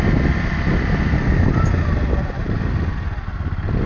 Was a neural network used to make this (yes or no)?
no